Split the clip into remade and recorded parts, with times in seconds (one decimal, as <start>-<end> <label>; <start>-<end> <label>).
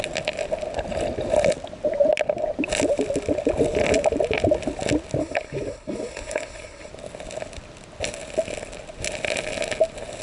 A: 0.0-5.2 recorded; 5.2-6.9 remade; 6.9-10.2 recorded